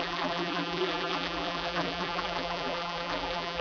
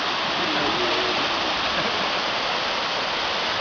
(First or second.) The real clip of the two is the second